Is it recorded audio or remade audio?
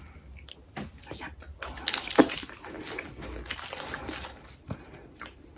recorded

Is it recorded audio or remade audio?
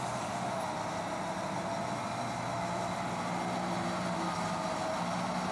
recorded